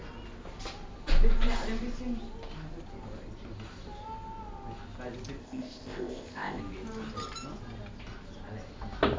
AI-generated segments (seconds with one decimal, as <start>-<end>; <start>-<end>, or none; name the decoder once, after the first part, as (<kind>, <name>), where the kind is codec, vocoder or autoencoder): 5.4-6.6 (codec, ZipCodec)